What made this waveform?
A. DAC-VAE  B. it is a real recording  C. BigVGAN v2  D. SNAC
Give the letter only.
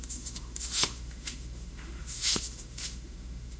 A